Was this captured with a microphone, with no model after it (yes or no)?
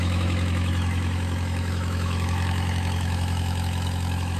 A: no